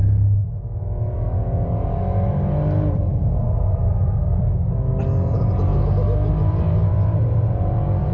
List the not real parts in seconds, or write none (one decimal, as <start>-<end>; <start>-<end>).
none